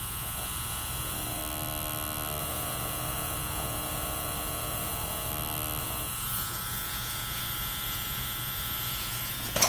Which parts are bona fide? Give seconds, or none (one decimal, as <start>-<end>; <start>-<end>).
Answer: 1.4-2.4; 5.3-5.8

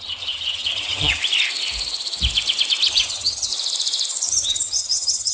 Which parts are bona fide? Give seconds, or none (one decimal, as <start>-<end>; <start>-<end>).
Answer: 1.2-2.9; 3.5-4.3